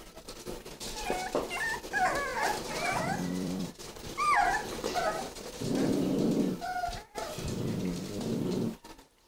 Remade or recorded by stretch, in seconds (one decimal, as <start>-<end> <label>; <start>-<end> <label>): 0.0-2.3 recorded; 2.3-6.0 remade; 6.0-9.3 recorded